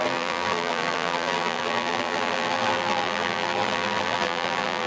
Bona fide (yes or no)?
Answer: no